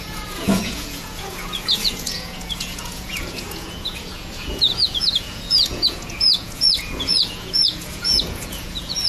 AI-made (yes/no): yes